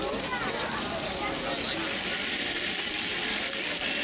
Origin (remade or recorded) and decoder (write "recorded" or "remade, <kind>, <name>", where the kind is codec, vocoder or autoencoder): recorded